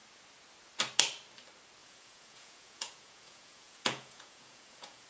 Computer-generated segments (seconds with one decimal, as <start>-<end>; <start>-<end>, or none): 1.8-5.1